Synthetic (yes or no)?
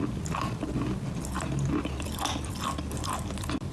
no